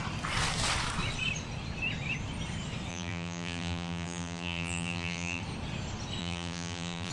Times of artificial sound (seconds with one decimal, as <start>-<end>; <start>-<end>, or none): 2.9-5.4; 6.2-7.1